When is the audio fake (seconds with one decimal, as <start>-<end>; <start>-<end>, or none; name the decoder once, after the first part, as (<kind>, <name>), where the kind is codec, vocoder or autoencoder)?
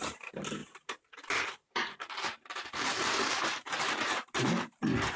0.0-5.2 (vocoder, BigVGAN v2)